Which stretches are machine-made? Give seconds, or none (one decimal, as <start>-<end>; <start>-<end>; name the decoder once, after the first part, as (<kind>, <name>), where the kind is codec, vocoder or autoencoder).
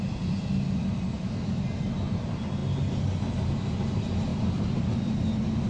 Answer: none